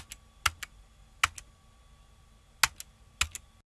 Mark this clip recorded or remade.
recorded